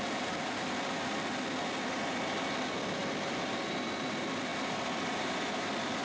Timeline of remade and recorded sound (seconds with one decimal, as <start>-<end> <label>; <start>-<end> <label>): 0.0-6.0 recorded